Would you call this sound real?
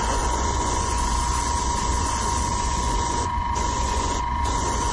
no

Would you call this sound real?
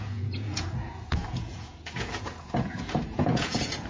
no